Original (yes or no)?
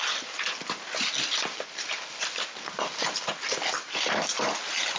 yes